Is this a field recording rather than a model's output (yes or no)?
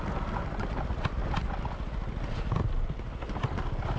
yes